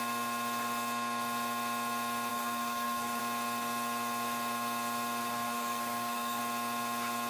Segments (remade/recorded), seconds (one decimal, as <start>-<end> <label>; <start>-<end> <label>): 0.0-2.3 recorded; 2.3-3.2 remade; 3.2-5.2 recorded; 5.2-6.4 remade; 6.4-7.3 recorded